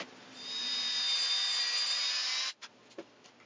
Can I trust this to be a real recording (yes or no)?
no